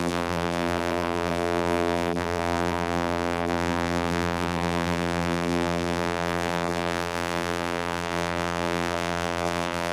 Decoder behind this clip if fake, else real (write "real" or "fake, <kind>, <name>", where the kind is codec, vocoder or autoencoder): fake, vocoder, BigVGAN v2